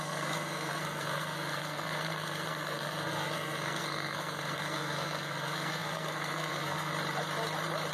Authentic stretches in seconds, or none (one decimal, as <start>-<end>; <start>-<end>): 6.9-7.9